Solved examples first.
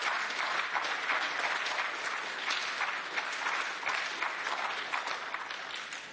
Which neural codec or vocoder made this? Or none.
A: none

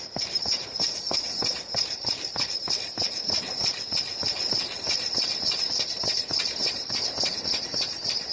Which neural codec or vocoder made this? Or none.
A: none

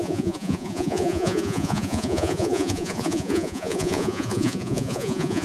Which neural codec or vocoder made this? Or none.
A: vocoder, Vocos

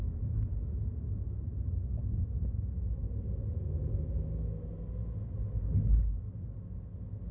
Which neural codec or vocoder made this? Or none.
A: none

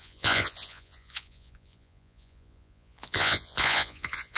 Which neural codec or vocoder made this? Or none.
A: vocoder, Vocos